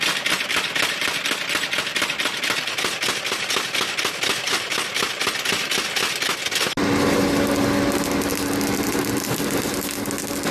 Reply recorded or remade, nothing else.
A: recorded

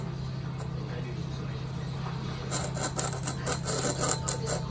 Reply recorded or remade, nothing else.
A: recorded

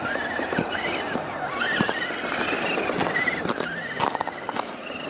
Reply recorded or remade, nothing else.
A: recorded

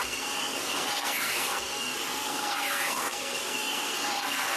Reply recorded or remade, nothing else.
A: remade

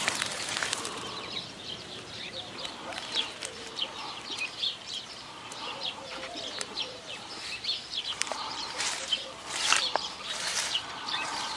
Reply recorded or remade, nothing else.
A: remade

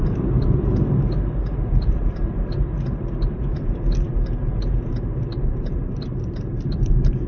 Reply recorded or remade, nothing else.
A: remade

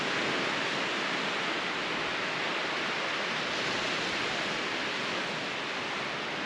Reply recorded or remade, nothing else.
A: recorded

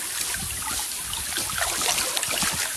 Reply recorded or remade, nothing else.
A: recorded